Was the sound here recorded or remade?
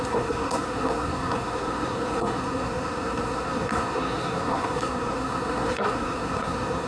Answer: remade